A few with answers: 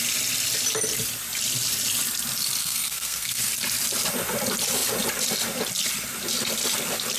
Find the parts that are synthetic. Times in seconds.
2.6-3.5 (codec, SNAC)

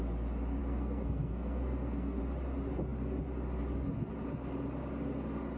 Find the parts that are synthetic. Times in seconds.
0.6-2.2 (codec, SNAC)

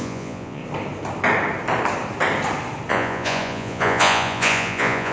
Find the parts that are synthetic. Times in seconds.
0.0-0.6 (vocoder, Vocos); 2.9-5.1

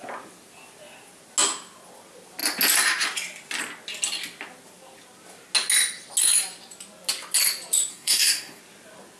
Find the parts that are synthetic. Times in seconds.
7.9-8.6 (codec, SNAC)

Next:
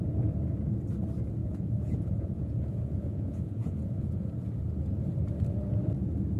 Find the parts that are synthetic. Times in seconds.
1.4-4.3 (vocoder, Vocos)